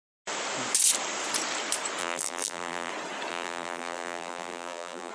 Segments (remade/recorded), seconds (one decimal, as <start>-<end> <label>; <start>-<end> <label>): 0.0-2.0 recorded; 2.0-2.9 remade; 2.9-3.3 recorded; 3.3-5.1 remade